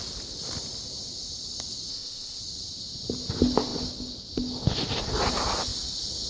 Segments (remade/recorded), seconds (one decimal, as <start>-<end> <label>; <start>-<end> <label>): 0.0-1.9 recorded; 1.9-2.4 remade; 2.4-6.3 recorded